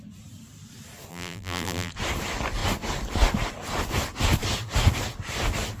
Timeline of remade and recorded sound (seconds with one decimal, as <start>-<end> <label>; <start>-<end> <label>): 0.0-1.1 recorded; 1.1-1.9 remade; 1.9-5.8 recorded